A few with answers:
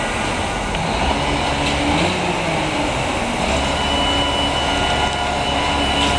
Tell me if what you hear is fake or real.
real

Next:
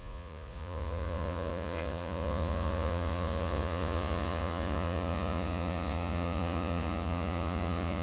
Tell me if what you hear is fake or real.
fake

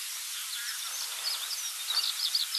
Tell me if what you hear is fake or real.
real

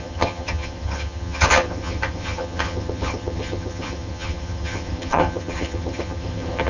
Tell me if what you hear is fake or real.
fake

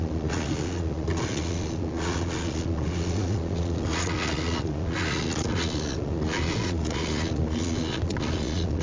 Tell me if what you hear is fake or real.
fake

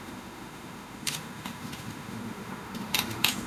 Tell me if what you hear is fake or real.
fake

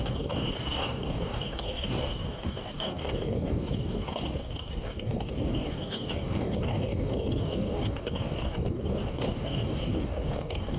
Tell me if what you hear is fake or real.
fake